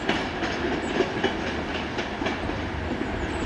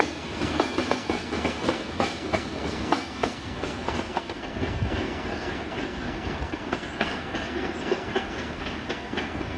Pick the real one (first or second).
first